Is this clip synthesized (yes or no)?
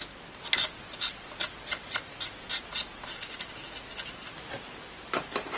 no